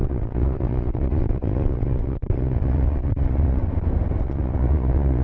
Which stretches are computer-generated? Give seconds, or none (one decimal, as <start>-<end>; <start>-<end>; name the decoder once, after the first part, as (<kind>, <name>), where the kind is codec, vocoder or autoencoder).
0.0-3.6 (vocoder, Vocos); 4.2-5.2